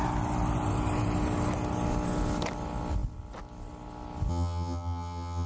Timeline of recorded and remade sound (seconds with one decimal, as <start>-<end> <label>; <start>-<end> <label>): 0.0-4.3 recorded; 4.3-5.5 remade